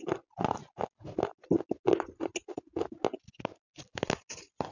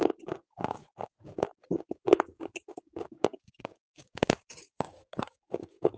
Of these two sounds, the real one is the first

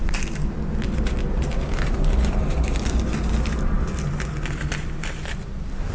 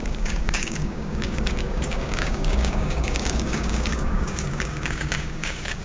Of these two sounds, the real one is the first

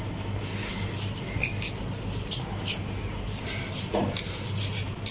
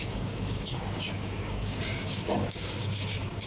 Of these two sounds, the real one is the first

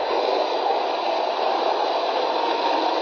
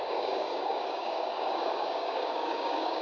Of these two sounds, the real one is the first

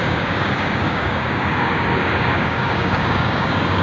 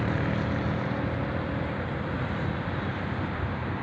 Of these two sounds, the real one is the second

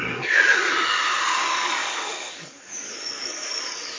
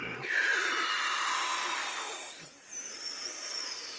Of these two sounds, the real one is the second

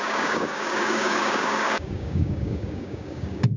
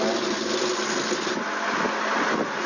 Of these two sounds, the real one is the second